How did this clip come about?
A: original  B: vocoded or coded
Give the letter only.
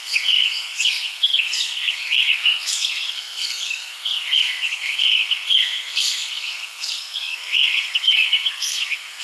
B